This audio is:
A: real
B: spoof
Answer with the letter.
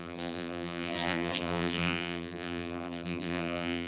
B